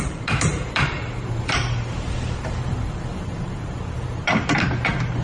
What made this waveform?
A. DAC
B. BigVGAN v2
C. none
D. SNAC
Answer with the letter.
B